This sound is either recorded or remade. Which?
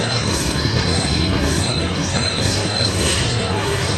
remade